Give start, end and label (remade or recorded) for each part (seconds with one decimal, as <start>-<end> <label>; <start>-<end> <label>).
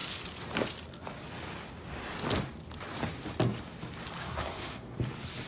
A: 0.0-4.2 recorded; 4.2-5.0 remade; 5.0-5.5 recorded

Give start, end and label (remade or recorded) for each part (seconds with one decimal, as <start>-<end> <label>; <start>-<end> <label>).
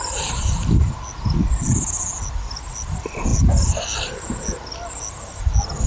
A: 0.0-5.9 recorded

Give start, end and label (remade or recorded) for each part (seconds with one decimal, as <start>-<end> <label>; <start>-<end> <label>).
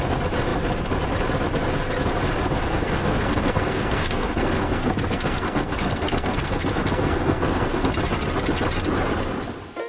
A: 0.0-2.6 recorded; 2.6-7.9 remade; 7.9-9.9 recorded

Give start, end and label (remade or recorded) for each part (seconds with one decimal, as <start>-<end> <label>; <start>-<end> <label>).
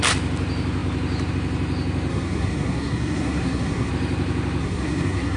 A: 0.0-2.1 recorded; 2.1-3.9 remade; 3.9-4.6 recorded; 4.6-5.4 remade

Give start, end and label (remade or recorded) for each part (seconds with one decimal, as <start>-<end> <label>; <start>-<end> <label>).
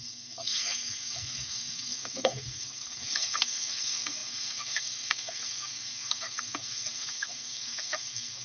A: 0.0-8.4 remade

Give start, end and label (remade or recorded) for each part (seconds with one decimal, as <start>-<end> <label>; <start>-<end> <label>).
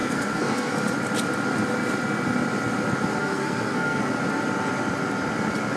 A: 0.0-0.7 remade; 0.7-3.2 recorded; 3.2-4.1 remade; 4.1-5.8 recorded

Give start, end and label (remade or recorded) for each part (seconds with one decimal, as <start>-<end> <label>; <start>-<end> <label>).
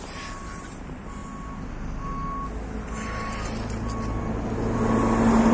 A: 0.0-5.5 recorded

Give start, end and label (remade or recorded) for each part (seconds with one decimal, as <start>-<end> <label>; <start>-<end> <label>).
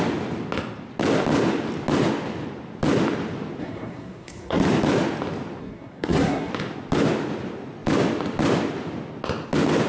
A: 0.0-3.6 recorded; 3.6-4.6 remade; 4.6-5.6 recorded; 5.6-6.5 remade; 6.5-9.9 recorded